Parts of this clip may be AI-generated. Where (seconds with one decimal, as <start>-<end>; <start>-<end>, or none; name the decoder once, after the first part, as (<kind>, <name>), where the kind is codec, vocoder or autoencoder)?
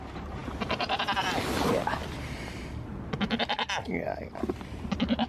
none